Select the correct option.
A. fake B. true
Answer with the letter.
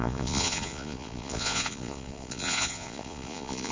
A